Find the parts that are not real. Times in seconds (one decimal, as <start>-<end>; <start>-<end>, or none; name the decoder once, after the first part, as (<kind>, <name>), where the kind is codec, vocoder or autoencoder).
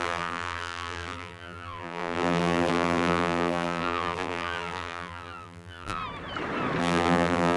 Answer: 0.0-6.0 (vocoder, BigVGAN v2); 6.8-7.6